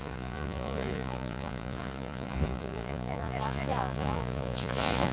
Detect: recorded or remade remade